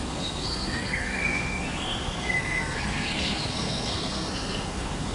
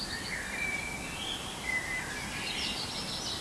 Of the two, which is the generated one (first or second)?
first